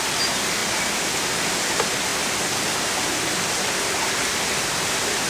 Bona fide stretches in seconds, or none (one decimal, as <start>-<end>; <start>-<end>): 0.0-5.3